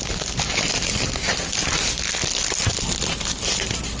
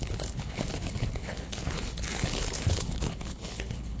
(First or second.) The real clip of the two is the first